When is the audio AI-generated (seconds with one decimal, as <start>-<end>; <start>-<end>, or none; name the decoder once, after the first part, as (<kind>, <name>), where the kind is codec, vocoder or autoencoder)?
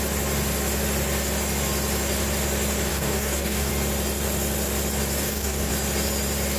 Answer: 2.9-3.7 (codec, DAC); 5.2-5.7